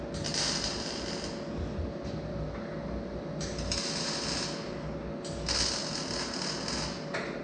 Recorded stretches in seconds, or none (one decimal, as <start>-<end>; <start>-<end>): 0.0-7.4